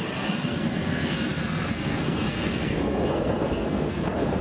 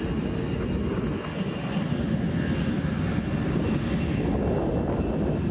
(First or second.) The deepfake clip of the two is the first